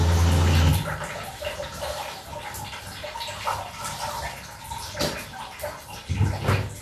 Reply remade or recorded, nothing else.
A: recorded